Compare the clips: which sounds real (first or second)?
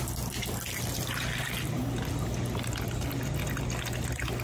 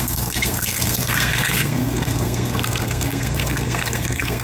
first